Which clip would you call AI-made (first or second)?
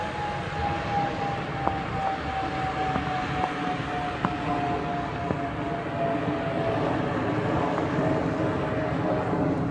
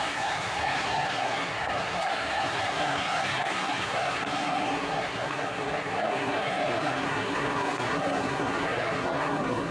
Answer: second